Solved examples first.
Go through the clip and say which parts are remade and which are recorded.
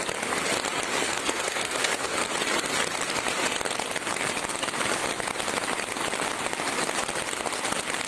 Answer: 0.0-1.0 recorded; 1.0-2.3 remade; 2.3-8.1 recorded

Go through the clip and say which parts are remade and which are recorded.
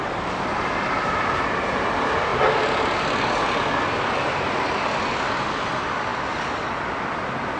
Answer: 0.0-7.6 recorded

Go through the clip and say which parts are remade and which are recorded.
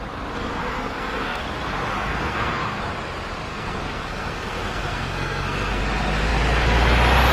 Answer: 0.0-0.6 recorded; 0.6-1.4 remade; 1.4-1.9 recorded; 1.9-2.8 remade; 2.8-3.5 recorded; 3.5-5.8 remade; 5.8-7.3 recorded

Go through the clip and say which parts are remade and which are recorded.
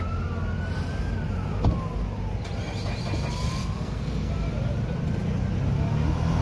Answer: 0.0-3.6 recorded; 3.6-4.3 remade; 4.3-6.4 recorded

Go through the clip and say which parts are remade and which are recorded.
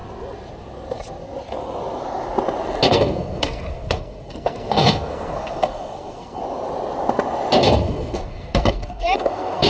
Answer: 0.0-2.9 recorded; 2.9-6.4 remade; 6.4-7.6 recorded; 7.6-9.7 remade